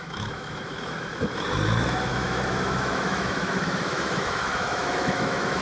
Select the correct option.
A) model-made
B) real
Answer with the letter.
A